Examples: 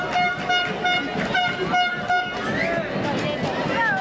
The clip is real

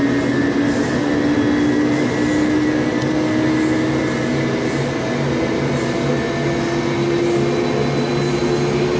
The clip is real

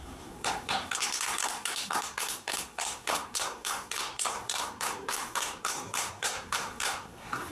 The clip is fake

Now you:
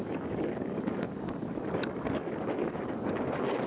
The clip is fake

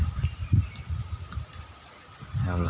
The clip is real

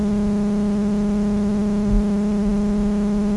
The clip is real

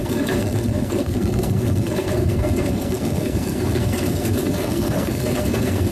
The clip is fake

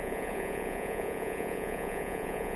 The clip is fake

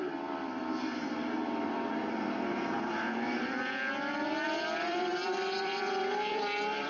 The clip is fake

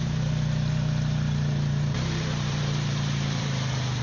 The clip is fake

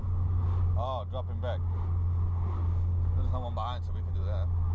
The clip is real